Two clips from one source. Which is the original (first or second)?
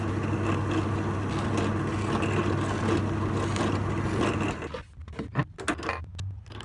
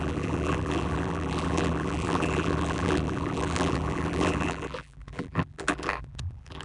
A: first